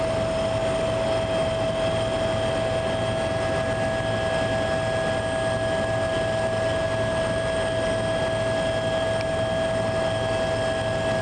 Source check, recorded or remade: recorded